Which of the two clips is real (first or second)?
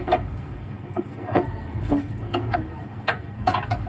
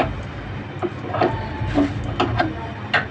second